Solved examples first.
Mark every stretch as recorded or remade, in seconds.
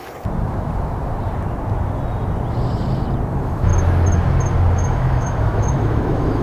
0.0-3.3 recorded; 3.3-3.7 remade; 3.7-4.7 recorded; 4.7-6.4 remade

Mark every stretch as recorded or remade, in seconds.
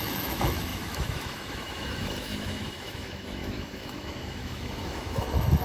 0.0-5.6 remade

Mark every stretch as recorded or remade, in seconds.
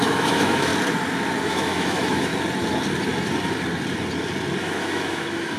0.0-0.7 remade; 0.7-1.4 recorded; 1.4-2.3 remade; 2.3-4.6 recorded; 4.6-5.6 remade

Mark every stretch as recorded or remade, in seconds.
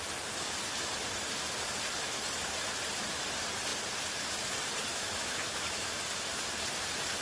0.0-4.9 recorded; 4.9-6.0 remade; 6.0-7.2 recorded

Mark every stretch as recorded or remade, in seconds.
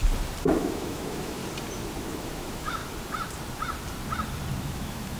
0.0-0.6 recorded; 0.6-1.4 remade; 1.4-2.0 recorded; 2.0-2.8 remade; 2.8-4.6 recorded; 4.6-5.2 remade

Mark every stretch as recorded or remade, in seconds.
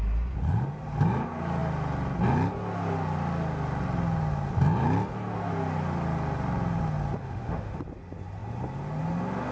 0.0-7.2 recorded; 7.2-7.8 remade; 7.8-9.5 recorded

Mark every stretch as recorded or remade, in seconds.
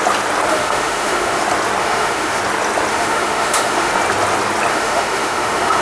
0.0-0.5 recorded; 0.5-1.4 remade; 1.4-1.8 recorded; 1.8-2.4 remade; 2.4-2.9 recorded; 2.9-3.9 remade; 3.9-4.7 recorded; 4.7-5.8 remade